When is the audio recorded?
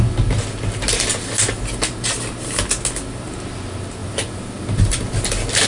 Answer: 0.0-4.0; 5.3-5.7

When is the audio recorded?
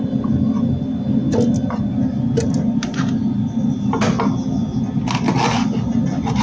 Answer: 0.0-6.4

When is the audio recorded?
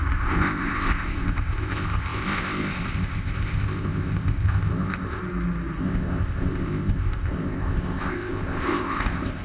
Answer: 5.2-5.8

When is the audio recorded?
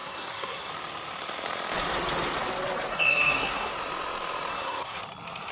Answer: 0.7-2.9; 3.7-4.5; 5.0-5.5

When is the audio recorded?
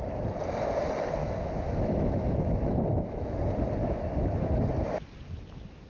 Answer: 0.0-1.2; 3.4-3.8; 4.5-5.9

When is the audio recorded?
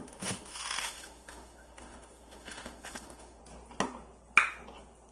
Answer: 3.4-5.1